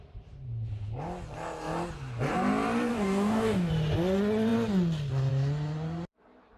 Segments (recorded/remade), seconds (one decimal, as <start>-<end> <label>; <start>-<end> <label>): 0.0-2.9 recorded; 2.9-3.7 remade; 3.7-6.6 recorded